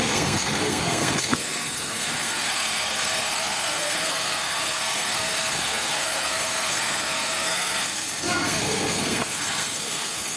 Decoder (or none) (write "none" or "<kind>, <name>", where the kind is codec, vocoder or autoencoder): codec, SNAC